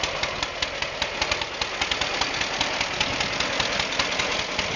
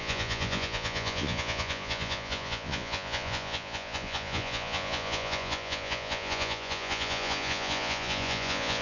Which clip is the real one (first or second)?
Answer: first